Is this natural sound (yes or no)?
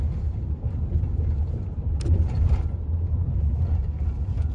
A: yes